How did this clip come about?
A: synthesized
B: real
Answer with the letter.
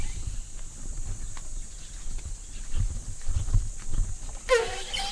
B